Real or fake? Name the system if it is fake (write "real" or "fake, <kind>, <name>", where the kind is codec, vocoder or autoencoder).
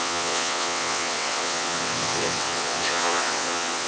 fake, vocoder, WaveNeXt